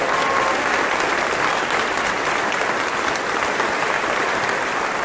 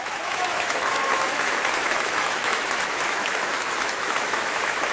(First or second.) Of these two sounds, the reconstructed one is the second